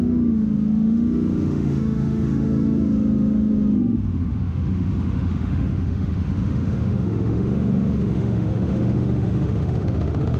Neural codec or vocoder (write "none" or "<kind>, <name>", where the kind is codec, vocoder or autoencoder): autoencoder, DAC-VAE